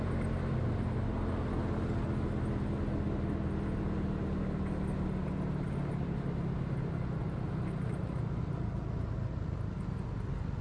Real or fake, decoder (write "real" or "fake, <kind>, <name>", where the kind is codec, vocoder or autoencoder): real